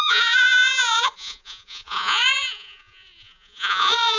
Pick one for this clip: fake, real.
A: fake